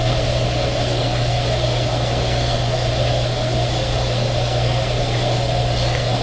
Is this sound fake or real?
fake